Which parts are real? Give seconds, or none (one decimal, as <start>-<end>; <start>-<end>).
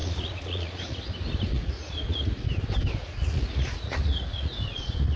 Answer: 1.1-1.5; 2.5-3.0